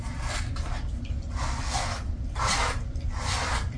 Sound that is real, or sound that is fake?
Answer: real